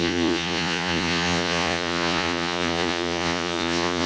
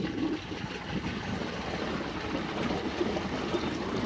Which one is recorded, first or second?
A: second